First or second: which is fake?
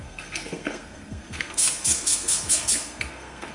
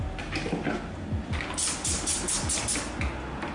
first